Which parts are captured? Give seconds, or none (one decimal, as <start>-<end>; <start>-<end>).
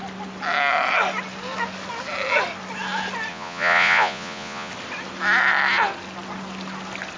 0.0-3.3; 4.7-7.2